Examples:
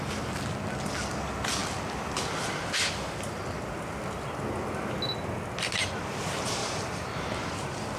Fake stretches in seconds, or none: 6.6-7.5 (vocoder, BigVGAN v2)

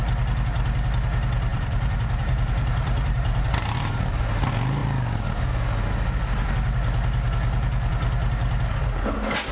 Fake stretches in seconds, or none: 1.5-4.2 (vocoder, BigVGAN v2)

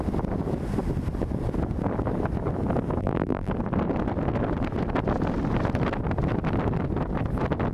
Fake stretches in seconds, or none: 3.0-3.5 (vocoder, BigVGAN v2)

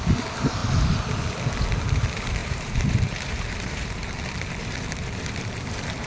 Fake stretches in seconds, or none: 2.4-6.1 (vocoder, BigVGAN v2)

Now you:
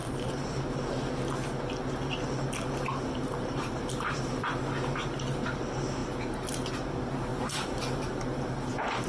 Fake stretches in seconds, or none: 0.0-1.1 (vocoder, BigVGAN v2); 3.2-4.6; 7.3-9.1

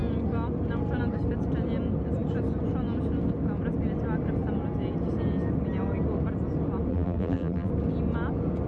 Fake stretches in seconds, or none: 6.9-7.7 (vocoder, BigVGAN v2)

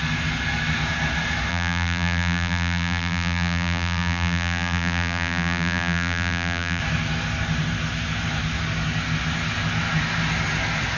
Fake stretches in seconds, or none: 1.5-6.8 (vocoder, BigVGAN v2)